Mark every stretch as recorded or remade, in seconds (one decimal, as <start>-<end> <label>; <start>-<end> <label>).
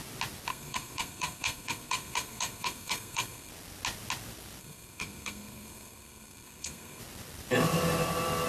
0.0-0.5 recorded; 0.5-3.5 remade; 3.5-4.6 recorded; 4.6-7.0 remade; 7.0-8.5 recorded